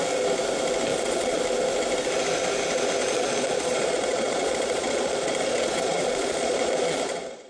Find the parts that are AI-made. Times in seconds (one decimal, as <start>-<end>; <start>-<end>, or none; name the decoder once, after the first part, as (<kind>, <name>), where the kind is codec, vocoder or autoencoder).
0.9-1.4 (vocoder, Vocos); 3.0-7.5